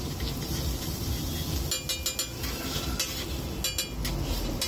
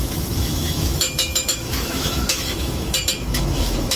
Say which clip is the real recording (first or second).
first